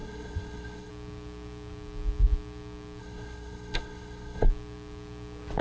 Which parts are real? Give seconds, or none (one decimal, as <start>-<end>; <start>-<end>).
0.9-3.0; 4.5-5.6